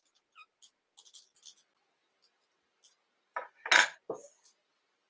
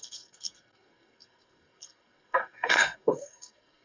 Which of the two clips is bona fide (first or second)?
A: first